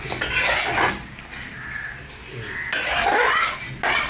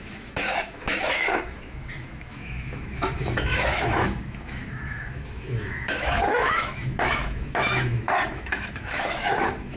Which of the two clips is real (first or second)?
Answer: first